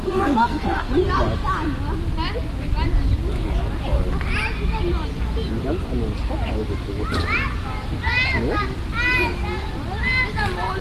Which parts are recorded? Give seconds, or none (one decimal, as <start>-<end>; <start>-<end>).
0.9-10.8